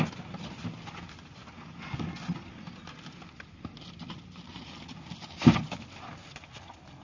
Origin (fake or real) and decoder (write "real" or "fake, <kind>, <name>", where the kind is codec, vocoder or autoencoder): real